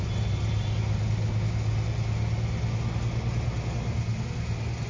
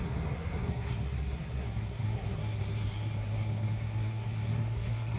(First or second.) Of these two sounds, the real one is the first